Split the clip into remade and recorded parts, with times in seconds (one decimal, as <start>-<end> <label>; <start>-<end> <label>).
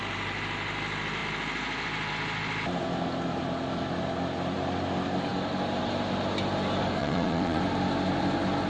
0.0-7.0 recorded; 7.0-7.6 remade; 7.6-8.7 recorded